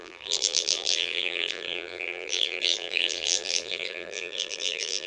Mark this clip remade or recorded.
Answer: remade